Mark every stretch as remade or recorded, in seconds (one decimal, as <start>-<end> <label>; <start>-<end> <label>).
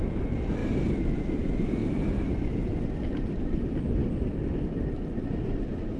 0.0-6.0 recorded